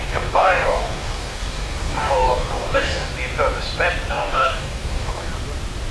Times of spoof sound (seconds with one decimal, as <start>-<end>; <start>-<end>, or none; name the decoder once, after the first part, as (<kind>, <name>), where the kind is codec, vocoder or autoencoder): 0.0-3.1 (codec, DAC); 4.1-5.3